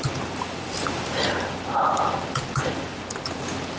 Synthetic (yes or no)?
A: no